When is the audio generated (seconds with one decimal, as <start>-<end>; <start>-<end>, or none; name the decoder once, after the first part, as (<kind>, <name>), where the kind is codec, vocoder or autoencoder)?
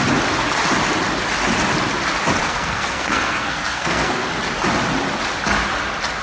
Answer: 2.4-4.3 (codec, SNAC)